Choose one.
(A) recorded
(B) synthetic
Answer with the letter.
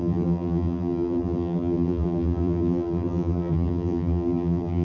B